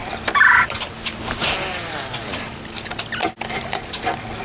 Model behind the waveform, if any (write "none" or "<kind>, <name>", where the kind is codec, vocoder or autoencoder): none